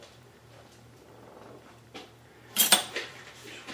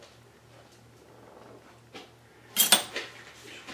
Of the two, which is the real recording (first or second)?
second